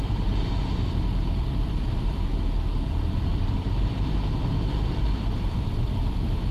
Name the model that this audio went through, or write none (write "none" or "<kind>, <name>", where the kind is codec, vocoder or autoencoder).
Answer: vocoder, BigVGAN v2